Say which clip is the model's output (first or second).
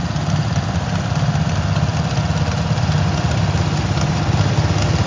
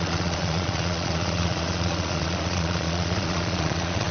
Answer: second